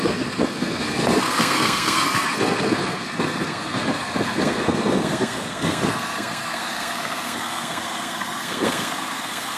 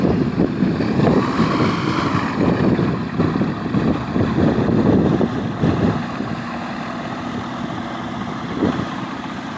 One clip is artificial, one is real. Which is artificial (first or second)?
first